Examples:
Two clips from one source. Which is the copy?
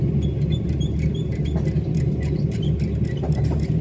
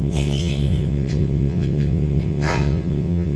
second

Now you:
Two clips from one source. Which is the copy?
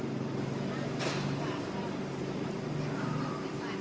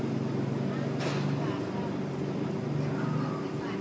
first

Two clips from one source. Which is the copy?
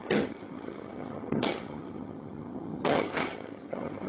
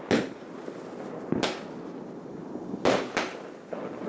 first